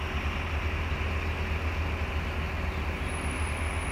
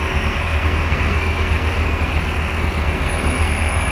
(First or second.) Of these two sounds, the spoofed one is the second